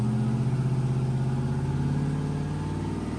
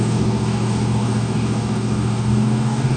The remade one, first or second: second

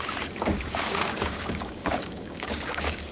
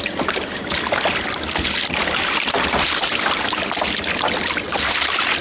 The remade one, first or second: first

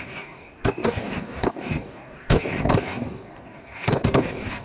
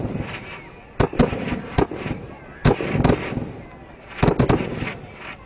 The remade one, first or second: first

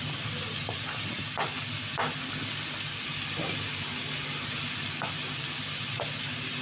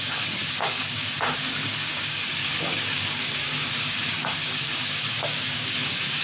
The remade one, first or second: second